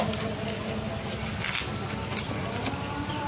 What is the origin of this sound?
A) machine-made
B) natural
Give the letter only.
B